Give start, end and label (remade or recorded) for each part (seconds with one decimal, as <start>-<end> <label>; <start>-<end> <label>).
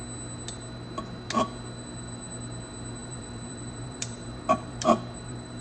0.0-3.0 recorded; 3.0-5.6 remade